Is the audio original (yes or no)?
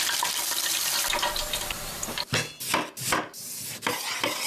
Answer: yes